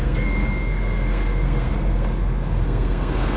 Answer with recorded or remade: remade